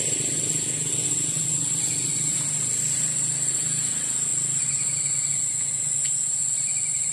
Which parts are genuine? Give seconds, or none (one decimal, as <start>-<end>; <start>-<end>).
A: 0.0-7.1